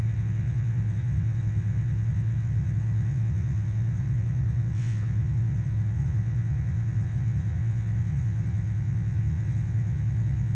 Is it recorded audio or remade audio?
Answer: remade